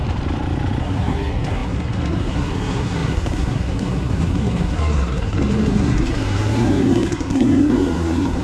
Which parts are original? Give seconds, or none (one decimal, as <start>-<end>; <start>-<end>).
0.0-0.8

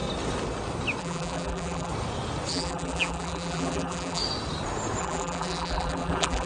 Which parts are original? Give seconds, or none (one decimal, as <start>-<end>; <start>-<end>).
0.0-1.0; 1.9-2.5; 4.2-5.0

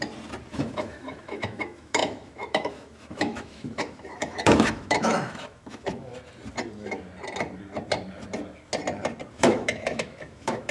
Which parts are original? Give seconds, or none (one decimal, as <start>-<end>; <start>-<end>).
0.0-0.5; 6.1-9.3

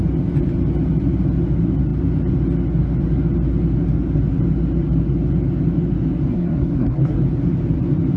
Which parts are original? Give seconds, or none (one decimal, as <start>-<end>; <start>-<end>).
0.0-6.3; 7.2-8.2